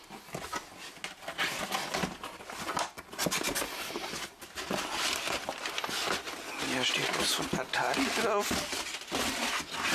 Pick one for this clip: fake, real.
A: real